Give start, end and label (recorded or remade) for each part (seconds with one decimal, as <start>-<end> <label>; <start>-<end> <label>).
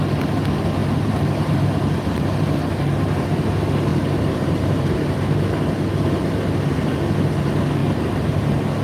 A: 0.0-0.8 recorded; 0.8-1.6 remade; 1.6-3.9 recorded; 3.9-5.4 remade; 5.4-7.8 recorded; 7.8-8.4 remade; 8.4-8.8 recorded